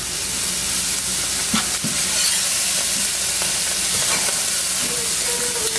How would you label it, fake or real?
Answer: real